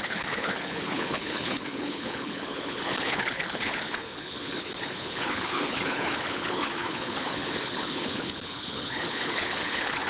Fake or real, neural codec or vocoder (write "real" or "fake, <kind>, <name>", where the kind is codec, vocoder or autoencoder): fake, codec, HILCodec